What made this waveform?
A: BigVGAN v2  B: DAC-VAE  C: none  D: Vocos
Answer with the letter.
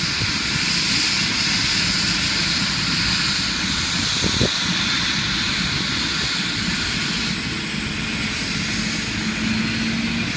C